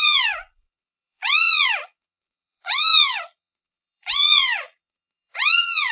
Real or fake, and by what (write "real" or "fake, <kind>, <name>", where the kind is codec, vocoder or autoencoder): fake, vocoder, Vocos